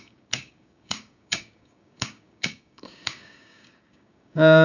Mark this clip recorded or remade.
remade